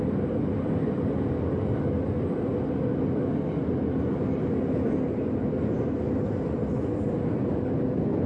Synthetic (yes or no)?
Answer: no